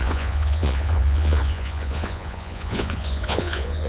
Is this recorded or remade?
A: remade